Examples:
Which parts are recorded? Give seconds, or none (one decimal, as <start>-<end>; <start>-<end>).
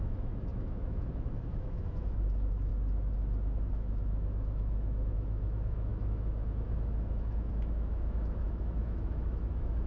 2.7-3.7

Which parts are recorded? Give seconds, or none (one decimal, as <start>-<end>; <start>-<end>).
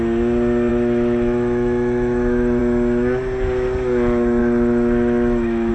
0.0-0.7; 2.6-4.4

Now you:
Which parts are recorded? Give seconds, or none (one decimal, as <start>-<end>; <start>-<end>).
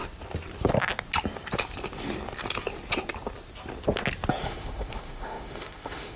0.0-4.4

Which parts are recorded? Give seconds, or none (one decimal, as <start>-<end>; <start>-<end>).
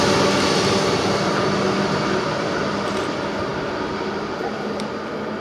0.0-5.4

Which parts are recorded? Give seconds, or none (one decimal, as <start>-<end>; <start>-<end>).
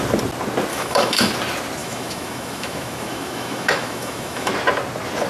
0.0-0.7; 1.3-1.8; 4.5-5.3